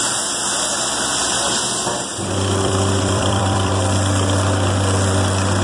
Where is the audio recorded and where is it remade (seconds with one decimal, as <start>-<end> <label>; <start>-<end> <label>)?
0.0-2.1 recorded; 2.1-3.7 remade; 3.7-5.6 recorded